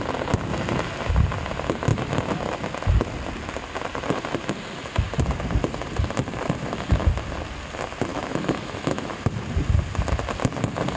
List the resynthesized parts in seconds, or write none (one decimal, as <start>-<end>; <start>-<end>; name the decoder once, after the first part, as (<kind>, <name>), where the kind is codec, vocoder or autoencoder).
8.1-9.3 (autoencoder, DAC-VAE)